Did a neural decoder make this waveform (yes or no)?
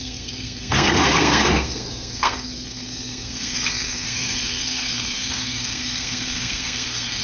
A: yes